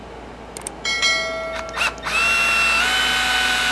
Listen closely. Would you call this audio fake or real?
real